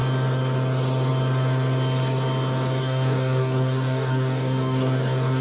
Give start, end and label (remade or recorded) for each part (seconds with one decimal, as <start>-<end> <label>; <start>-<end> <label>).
0.0-2.8 recorded; 2.8-5.4 remade